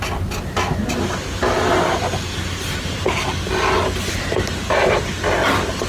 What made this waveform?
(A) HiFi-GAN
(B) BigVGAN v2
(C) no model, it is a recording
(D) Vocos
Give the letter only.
C